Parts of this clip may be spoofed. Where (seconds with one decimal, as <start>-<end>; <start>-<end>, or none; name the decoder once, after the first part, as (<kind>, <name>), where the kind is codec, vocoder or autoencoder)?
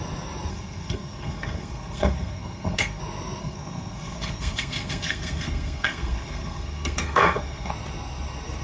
0.5-3.0 (codec, SNAC); 3.4-7.7